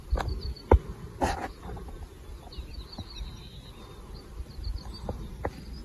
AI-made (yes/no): no